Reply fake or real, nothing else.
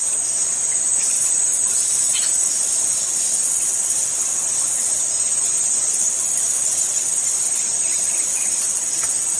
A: real